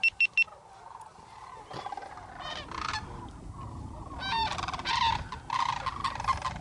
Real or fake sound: real